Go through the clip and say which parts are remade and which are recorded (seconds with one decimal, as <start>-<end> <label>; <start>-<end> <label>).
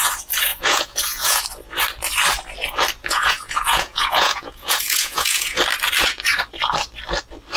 0.0-0.5 recorded; 0.5-1.4 remade; 1.4-3.0 recorded; 3.0-5.6 remade; 5.6-7.6 recorded